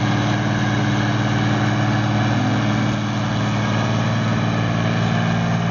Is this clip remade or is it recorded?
recorded